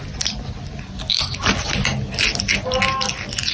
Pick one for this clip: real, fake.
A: real